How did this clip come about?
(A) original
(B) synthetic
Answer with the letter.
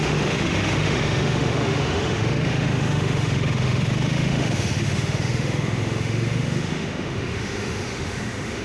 B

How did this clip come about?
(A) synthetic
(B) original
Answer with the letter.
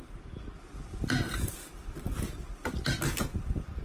B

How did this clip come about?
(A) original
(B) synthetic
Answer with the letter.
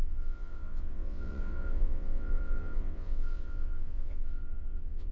B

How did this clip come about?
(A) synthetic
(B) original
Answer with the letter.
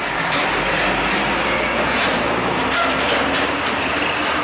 B